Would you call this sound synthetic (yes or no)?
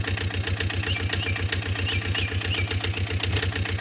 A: no